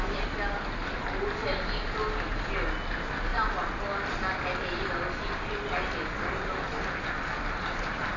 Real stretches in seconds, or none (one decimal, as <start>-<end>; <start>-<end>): 0.0-8.2